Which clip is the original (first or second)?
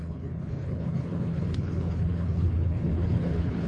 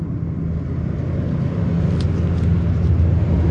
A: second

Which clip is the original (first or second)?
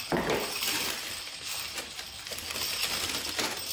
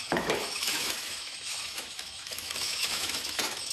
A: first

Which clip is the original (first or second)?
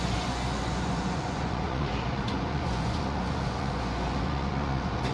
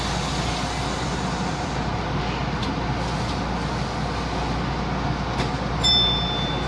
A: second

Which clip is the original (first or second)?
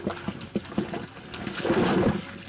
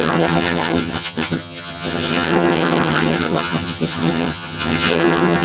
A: first